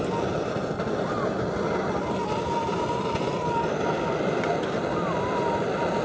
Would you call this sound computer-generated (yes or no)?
no